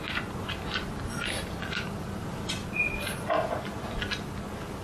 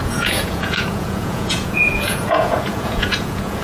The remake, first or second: second